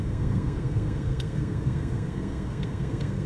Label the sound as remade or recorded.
remade